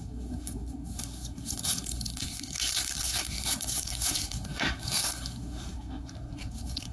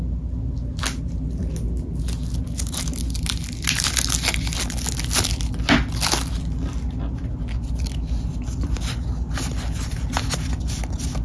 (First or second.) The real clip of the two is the second